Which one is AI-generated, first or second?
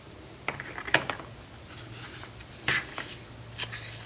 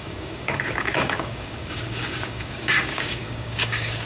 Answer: second